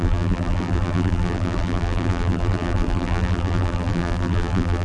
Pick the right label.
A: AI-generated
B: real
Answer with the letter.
A